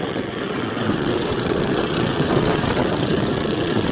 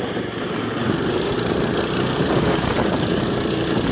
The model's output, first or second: first